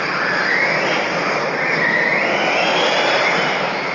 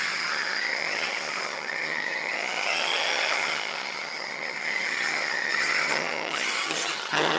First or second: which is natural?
first